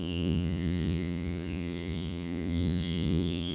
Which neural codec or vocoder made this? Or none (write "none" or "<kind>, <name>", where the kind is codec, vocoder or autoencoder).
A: vocoder, Vocos